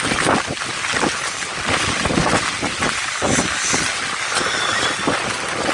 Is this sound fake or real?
real